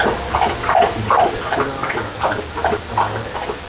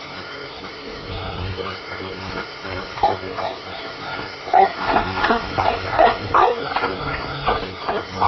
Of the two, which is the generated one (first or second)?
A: second